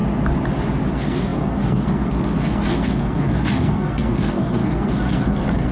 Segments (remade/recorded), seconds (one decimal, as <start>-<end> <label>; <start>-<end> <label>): 0.0-0.9 recorded; 0.9-5.7 remade